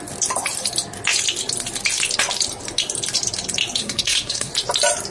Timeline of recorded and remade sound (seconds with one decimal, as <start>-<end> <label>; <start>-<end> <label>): 0.0-3.8 recorded; 3.8-4.5 remade; 4.5-5.1 recorded